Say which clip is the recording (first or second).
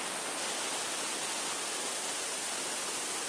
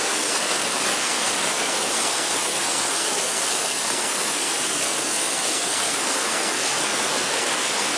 first